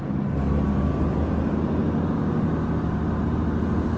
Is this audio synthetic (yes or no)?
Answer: no